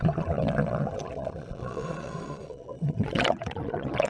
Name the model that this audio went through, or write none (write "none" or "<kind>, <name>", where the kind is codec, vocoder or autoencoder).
vocoder, Vocos